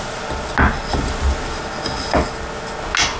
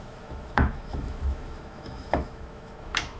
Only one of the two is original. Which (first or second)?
first